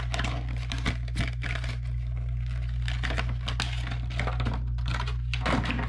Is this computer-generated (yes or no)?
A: no